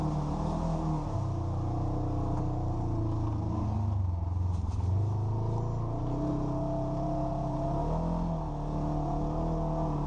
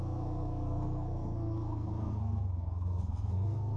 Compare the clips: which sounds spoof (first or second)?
second